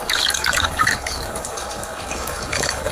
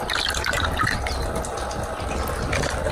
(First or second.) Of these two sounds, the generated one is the first